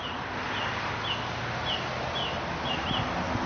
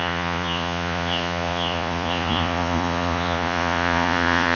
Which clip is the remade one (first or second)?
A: second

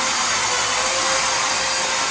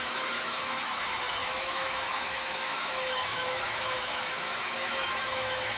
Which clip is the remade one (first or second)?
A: second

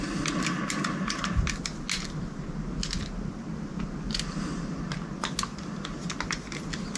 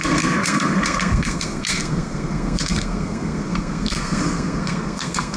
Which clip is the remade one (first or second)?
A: second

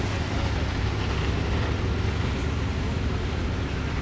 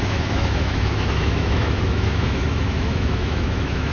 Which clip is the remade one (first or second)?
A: second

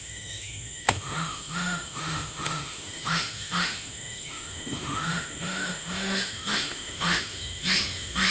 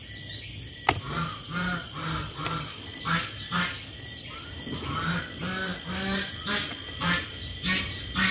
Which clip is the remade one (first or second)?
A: first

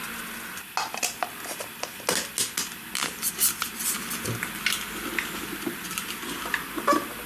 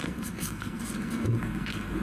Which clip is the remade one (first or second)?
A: second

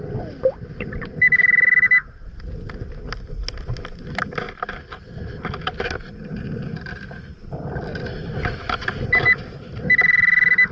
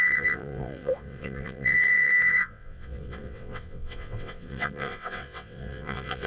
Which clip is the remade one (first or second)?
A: second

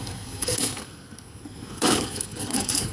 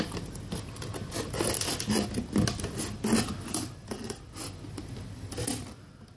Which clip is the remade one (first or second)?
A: first